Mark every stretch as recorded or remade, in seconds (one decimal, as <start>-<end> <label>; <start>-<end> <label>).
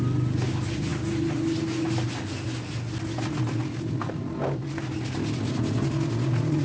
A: 0.0-6.6 recorded